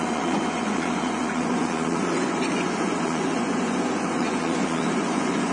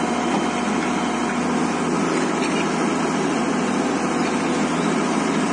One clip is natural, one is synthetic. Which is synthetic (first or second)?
first